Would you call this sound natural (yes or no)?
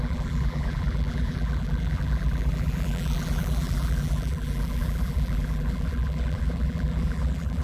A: no